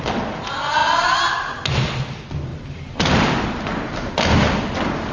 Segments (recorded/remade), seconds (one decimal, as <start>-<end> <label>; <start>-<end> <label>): 0.0-0.8 recorded; 0.8-1.6 remade; 1.6-2.5 recorded; 2.5-4.1 remade; 4.1-5.1 recorded